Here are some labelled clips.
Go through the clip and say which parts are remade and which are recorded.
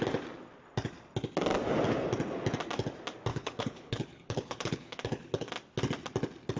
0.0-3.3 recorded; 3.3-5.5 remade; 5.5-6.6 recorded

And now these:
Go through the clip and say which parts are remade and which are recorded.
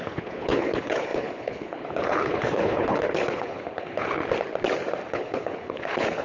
0.0-4.2 remade; 4.2-5.1 recorded; 5.1-6.2 remade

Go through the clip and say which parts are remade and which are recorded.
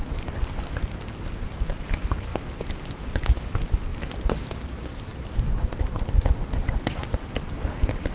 0.0-8.1 recorded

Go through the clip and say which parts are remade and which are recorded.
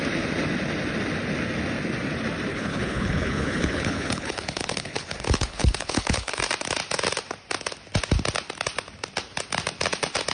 0.0-2.5 recorded; 2.5-6.4 remade; 6.4-10.3 recorded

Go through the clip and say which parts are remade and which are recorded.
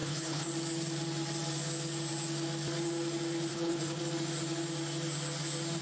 0.0-0.5 remade; 0.5-3.5 recorded; 3.5-4.0 remade; 4.0-5.8 recorded